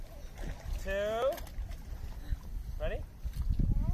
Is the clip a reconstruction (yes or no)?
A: no